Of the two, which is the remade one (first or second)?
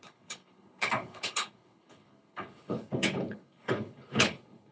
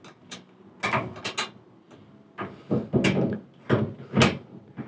first